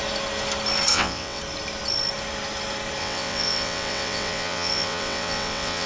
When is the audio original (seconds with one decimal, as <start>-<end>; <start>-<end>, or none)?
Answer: 0.0-0.9; 1.4-3.0